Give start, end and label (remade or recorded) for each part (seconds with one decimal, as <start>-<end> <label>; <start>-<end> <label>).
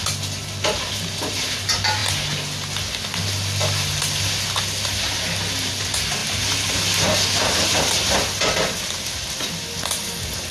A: 0.0-10.5 recorded